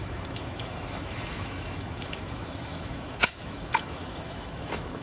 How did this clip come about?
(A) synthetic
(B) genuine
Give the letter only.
A